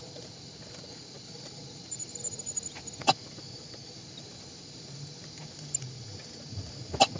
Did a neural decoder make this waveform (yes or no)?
no